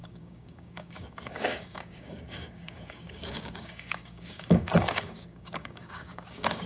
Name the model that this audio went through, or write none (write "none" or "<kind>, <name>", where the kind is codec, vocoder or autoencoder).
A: codec, DAC